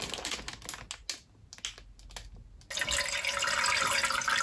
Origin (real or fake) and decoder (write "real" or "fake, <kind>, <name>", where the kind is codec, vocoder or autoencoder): real